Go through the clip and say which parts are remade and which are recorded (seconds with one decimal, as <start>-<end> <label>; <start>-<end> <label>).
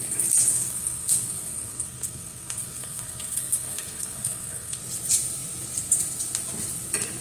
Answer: 0.0-0.5 recorded; 0.5-4.8 remade; 4.8-7.2 recorded